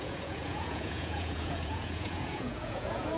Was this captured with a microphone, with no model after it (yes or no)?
no